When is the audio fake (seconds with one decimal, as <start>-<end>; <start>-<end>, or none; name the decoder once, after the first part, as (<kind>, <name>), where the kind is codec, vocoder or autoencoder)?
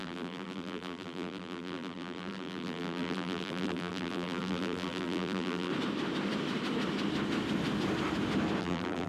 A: 0.0-5.7 (vocoder, BigVGAN v2); 8.6-9.1